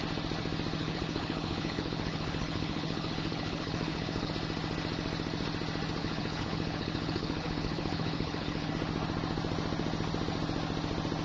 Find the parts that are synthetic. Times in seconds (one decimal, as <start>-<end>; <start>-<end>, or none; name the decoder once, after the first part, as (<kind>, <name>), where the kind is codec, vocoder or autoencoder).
0.8-4.3 (codec, HILCodec); 6.0-8.7